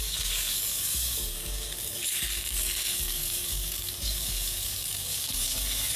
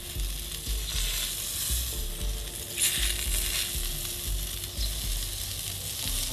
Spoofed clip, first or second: first